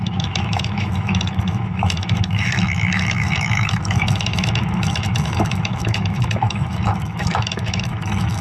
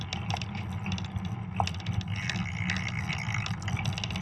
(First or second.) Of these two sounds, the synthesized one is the first